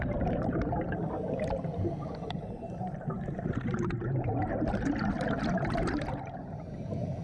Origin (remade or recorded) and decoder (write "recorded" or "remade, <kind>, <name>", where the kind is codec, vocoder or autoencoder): remade, vocoder, BigVGAN v2